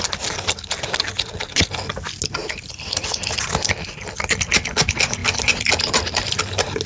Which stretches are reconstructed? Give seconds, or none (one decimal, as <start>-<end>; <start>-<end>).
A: 2.4-3.3; 5.2-6.4